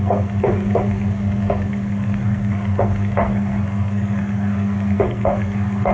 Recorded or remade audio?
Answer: remade